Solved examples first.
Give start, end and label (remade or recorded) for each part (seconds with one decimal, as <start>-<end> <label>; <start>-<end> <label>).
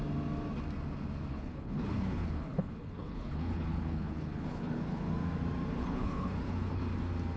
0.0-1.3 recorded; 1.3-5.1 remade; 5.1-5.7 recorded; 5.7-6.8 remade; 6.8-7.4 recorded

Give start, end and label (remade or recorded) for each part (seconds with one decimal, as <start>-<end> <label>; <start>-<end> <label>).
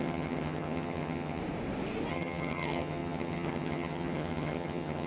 0.0-1.4 remade; 1.4-2.1 recorded; 2.1-5.1 remade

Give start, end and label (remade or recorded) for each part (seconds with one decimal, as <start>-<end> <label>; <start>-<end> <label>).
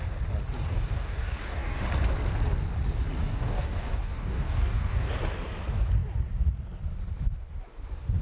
0.0-0.7 recorded; 0.7-1.8 remade; 1.8-3.3 recorded; 3.3-5.1 remade; 5.1-8.2 recorded